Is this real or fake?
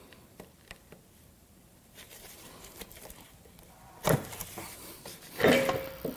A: fake